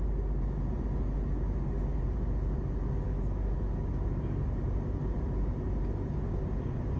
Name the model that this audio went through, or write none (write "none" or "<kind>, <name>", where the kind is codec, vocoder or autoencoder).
none